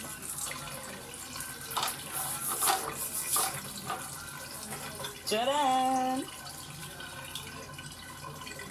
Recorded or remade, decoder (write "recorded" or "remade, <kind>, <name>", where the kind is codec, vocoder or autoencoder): recorded